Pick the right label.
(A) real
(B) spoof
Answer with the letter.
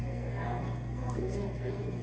B